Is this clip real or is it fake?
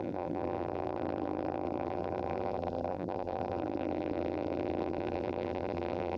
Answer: fake